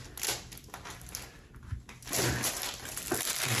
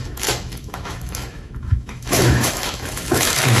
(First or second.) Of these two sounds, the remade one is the second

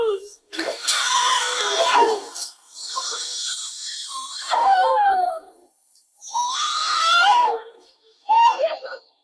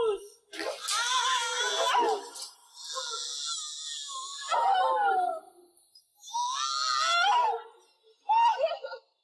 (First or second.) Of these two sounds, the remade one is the first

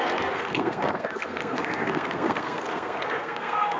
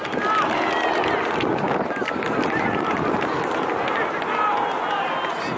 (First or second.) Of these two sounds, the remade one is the first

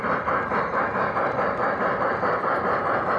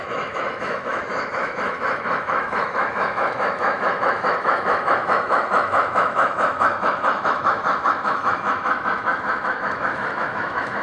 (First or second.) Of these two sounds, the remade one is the second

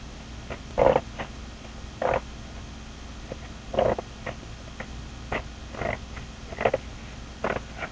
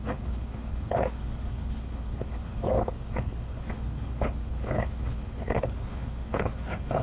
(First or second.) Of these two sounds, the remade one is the second